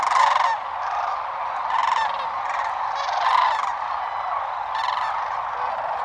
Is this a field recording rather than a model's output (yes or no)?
yes